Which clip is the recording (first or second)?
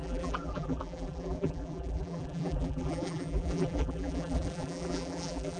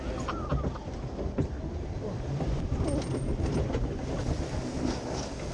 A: second